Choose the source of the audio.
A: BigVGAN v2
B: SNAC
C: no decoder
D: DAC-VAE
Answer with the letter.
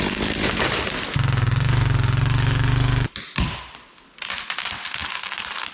C